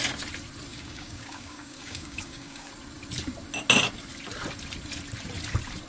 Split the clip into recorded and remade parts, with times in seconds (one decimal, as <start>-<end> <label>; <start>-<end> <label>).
0.0-0.7 recorded; 0.7-2.7 remade; 2.7-5.9 recorded